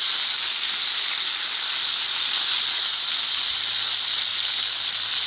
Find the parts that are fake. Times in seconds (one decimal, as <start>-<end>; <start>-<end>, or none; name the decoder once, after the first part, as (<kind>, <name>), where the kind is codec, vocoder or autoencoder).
none